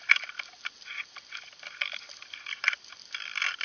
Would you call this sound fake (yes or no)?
no